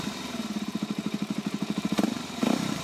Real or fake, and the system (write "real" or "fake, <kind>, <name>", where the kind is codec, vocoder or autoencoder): fake, vocoder, BigVGAN v2